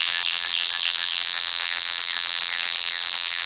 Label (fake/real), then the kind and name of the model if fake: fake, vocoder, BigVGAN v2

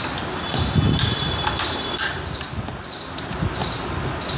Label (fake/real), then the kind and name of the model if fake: real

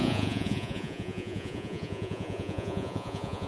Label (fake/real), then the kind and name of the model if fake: fake, vocoder, Vocos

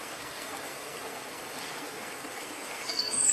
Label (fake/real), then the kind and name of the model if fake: fake, codec, SNAC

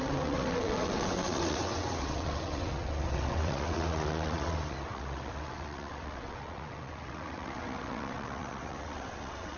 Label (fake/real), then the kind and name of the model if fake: fake, vocoder, WaveNeXt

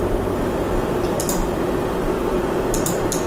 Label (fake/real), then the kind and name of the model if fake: real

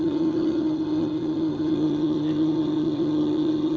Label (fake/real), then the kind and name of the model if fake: fake, vocoder, HiFi-GAN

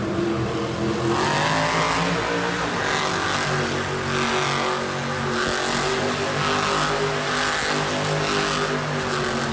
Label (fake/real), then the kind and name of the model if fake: real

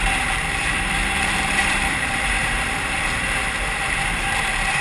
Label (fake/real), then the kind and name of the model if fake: fake, vocoder, BigVGAN v2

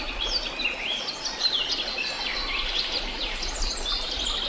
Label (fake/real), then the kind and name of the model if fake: real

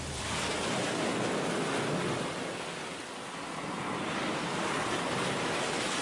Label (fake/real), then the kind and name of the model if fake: real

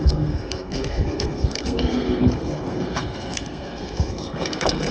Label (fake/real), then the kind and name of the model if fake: fake, codec, SNAC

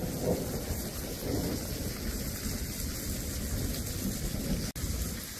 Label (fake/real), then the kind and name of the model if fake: real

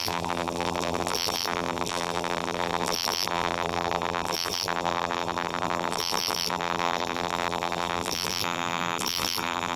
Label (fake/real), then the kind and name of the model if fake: fake, vocoder, BigVGAN v2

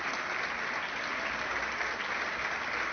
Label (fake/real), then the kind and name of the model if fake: real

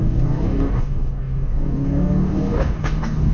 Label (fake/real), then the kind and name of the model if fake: fake, codec, DAC